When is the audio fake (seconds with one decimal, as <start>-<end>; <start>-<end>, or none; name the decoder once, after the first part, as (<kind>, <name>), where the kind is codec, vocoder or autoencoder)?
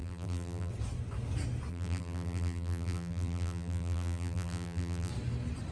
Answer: 0.0-0.7 (vocoder, BigVGAN v2); 1.7-5.1